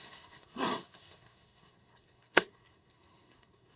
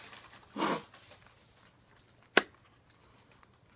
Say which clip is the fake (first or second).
first